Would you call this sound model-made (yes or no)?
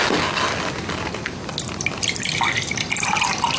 no